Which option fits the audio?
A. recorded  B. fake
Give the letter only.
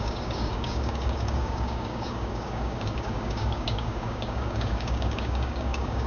B